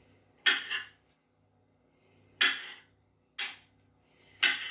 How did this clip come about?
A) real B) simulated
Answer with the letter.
A